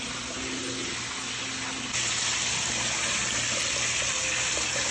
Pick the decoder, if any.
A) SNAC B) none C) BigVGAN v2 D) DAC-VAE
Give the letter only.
B